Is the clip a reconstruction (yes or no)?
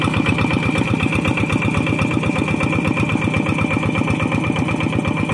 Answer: no